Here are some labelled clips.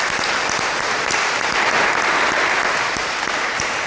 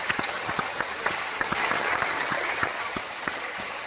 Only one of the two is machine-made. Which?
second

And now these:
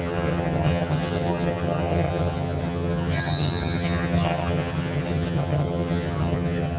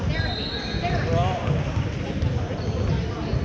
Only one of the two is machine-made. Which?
first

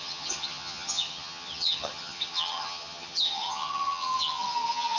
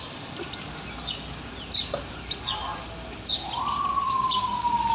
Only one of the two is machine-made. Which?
first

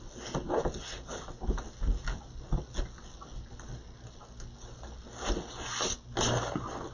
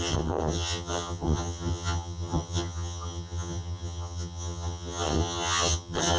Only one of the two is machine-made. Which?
second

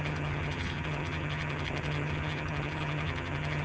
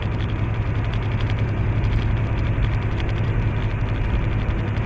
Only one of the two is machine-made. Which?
first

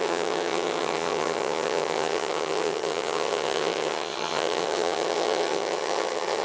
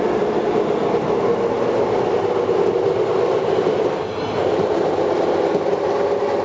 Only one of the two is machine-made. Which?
first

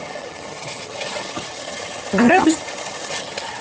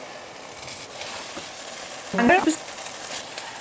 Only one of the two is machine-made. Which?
first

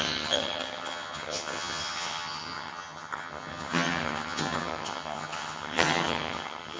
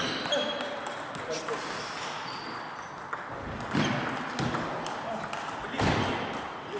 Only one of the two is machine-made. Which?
first